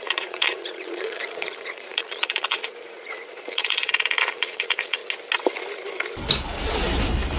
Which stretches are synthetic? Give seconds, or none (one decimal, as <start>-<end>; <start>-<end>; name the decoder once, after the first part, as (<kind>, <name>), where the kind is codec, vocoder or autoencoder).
0.0-5.0 (vocoder, Vocos)